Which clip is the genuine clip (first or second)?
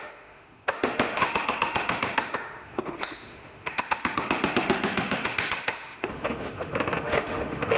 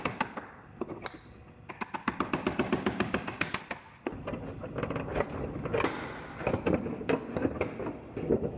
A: second